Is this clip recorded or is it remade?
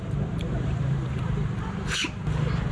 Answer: remade